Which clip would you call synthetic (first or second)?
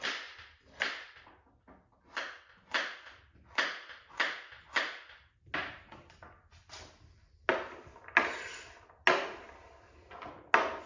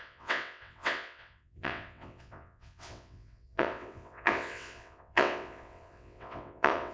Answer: second